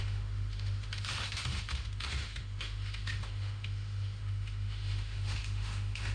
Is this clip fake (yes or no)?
yes